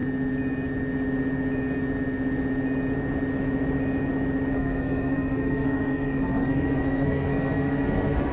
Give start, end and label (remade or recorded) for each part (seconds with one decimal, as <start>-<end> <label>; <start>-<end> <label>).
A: 0.0-4.5 recorded; 4.5-8.3 remade